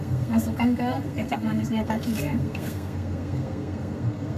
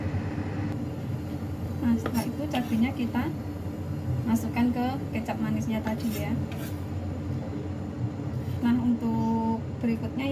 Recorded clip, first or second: second